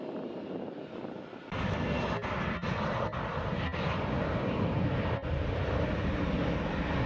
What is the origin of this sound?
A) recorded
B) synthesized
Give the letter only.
A